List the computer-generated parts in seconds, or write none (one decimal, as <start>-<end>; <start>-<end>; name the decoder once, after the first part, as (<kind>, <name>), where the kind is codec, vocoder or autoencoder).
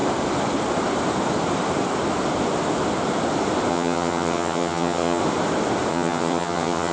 3.7-5.2 (vocoder, HiFi-GAN); 5.9-6.9